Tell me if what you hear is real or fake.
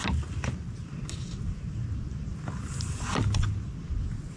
real